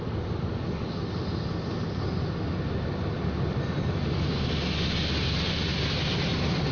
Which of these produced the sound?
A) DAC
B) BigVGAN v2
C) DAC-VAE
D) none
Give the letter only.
D